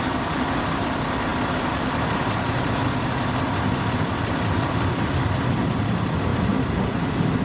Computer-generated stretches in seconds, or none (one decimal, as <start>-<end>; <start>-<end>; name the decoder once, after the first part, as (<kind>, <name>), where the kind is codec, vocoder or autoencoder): 6.3-6.8 (vocoder, BigVGAN v2)